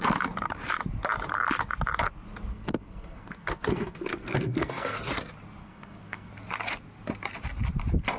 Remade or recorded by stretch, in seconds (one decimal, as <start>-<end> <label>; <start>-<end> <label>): 0.0-2.5 recorded; 2.5-5.0 remade; 5.0-5.6 recorded; 5.6-6.3 remade; 6.3-8.2 recorded